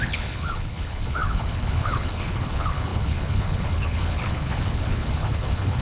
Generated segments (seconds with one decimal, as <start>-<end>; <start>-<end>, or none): 0.0-5.8